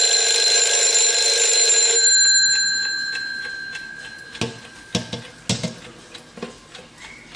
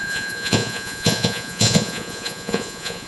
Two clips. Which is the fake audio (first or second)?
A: second